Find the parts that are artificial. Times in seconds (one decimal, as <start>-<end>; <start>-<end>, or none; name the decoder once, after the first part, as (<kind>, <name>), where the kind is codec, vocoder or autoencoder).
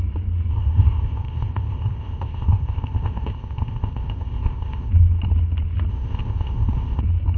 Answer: 0.5-4.9 (codec, ZipCodec); 5.9-7.0